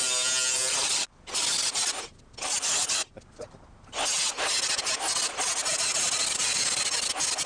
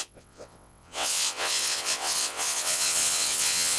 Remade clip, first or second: second